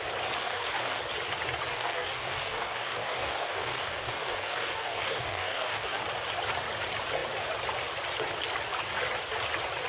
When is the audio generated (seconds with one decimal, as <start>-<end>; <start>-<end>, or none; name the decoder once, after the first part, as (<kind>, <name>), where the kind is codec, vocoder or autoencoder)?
0.4-1.0 (codec, DAC); 1.7-6.0